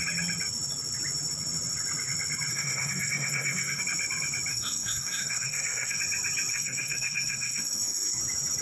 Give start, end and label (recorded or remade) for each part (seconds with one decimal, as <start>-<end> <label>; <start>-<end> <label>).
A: 0.0-2.5 recorded; 2.5-3.8 remade; 3.8-4.5 recorded; 4.5-6.0 remade; 6.0-6.5 recorded; 6.5-8.2 remade; 8.2-8.6 recorded

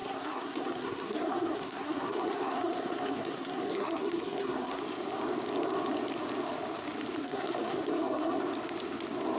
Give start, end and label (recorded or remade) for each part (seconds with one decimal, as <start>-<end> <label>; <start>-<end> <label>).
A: 0.0-4.8 remade; 4.8-7.2 recorded; 7.2-8.4 remade; 8.4-9.4 recorded